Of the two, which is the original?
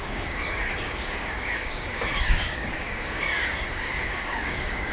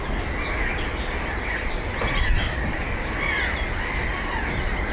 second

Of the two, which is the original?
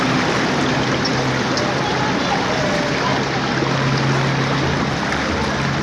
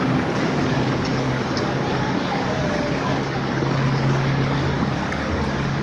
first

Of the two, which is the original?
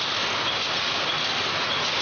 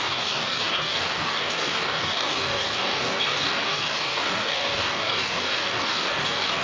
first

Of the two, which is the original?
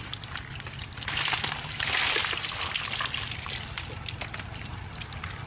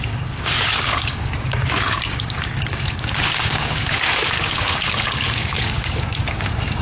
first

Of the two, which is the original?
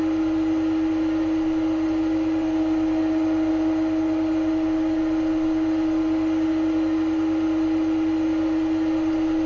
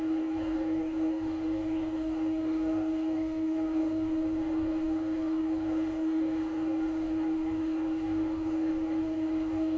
first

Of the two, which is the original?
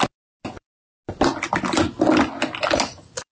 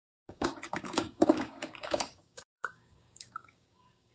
first